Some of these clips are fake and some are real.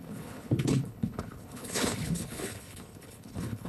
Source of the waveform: fake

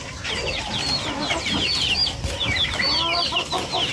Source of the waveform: real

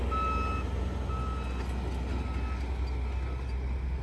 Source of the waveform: real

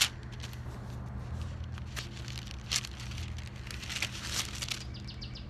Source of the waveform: real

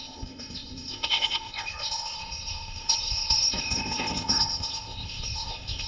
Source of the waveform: fake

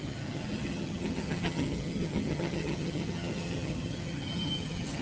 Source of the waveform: fake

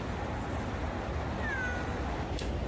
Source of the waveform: real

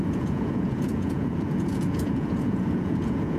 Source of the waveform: fake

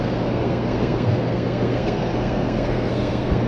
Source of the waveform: fake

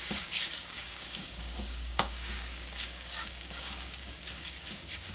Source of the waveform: fake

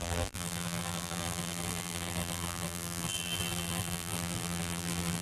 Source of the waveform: fake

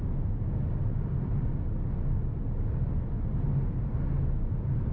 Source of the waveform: real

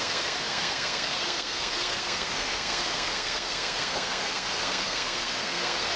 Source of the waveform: fake